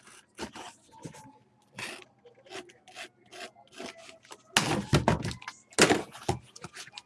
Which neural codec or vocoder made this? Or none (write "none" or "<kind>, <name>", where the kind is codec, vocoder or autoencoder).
none